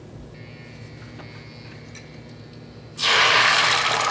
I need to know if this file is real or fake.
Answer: real